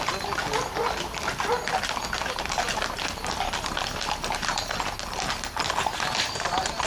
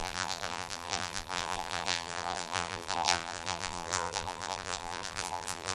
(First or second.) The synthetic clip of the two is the second